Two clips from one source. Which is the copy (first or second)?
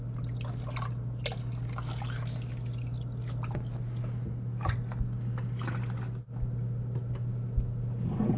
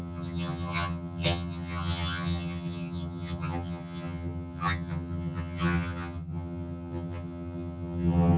second